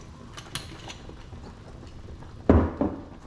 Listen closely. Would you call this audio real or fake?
real